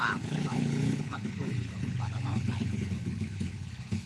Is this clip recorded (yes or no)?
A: no